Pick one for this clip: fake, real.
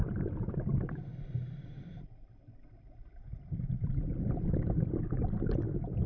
real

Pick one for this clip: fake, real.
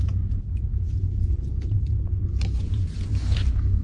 fake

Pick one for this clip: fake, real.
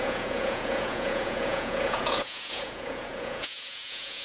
fake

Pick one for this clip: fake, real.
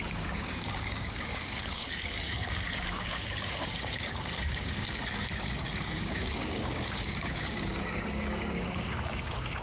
fake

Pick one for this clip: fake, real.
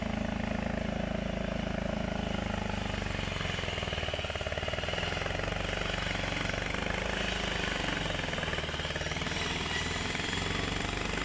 real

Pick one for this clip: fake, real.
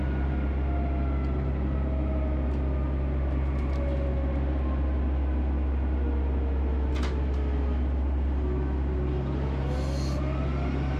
real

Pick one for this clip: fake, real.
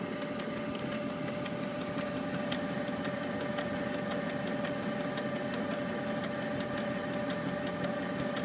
real